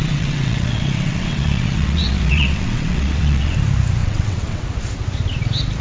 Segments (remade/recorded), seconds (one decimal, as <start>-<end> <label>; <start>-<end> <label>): 0.0-3.5 remade; 3.5-4.0 recorded; 4.0-4.6 remade; 4.6-5.8 recorded